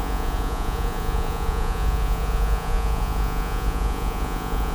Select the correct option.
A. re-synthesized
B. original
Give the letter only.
A